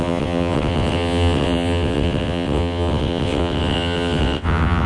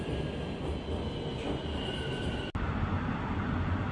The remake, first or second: first